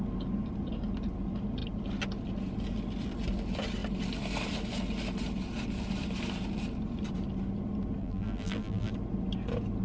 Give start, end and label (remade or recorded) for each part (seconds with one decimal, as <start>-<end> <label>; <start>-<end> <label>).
0.0-8.0 recorded; 8.0-8.9 remade; 8.9-9.8 recorded